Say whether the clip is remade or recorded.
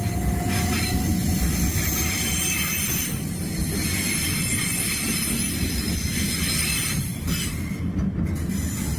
recorded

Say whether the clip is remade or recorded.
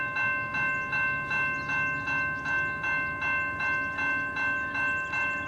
recorded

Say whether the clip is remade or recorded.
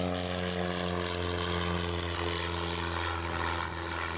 recorded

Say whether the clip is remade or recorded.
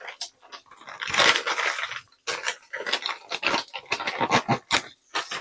recorded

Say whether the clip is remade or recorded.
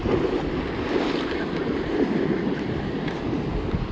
recorded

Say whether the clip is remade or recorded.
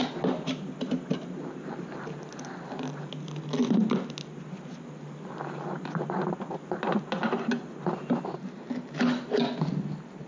recorded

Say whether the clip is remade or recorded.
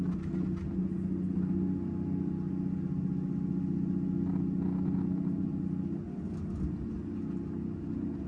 recorded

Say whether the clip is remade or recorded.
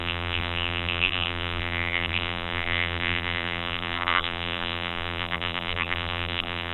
remade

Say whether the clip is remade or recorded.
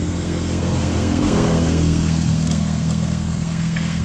remade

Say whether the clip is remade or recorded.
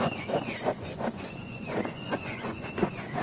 remade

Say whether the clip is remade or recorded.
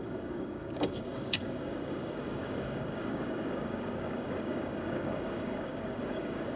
remade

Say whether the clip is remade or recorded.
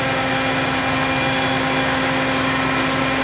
recorded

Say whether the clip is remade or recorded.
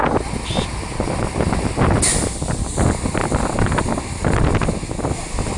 recorded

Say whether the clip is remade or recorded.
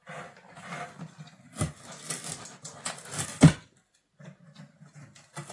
recorded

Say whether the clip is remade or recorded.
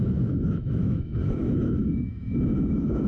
remade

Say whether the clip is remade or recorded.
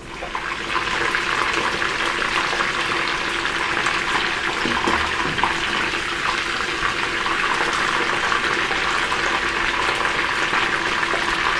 recorded